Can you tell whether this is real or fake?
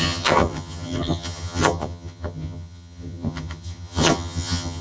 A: fake